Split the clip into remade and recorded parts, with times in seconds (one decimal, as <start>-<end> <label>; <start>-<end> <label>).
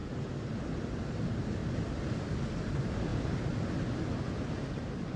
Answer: 0.0-1.6 recorded; 1.6-2.7 remade; 2.7-5.2 recorded